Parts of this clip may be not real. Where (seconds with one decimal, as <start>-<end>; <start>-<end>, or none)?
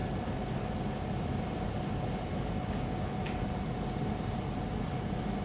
none